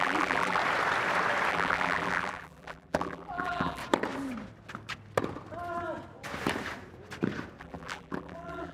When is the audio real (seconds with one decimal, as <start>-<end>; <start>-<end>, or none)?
0.6-1.5; 3.8-7.6